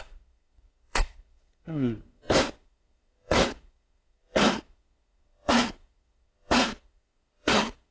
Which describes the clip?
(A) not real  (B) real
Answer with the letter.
A